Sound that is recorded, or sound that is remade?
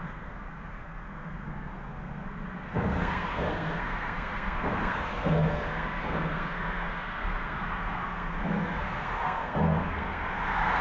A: remade